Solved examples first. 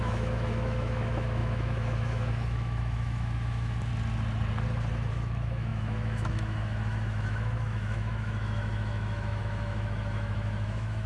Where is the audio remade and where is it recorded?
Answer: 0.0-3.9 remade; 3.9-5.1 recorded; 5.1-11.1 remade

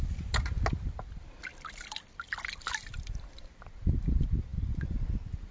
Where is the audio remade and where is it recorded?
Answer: 0.0-1.5 recorded; 1.5-3.4 remade; 3.4-5.5 recorded

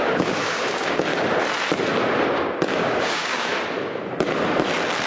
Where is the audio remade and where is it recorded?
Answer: 0.0-1.1 remade; 1.1-2.3 recorded; 2.3-3.5 remade; 3.5-5.1 recorded

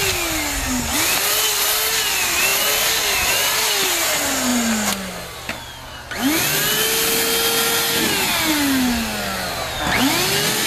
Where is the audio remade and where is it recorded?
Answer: 0.0-10.7 recorded

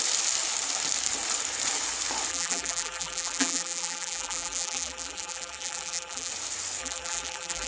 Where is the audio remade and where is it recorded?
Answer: 0.0-2.3 recorded; 2.3-6.3 remade; 6.3-6.8 recorded; 6.8-7.7 remade